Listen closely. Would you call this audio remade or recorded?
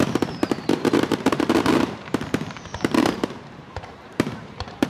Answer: remade